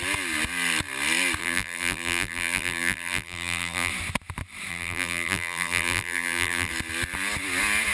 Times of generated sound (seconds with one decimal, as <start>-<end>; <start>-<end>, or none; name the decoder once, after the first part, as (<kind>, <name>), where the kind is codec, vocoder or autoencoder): 1.4-3.9 (vocoder, BigVGAN v2); 4.7-6.7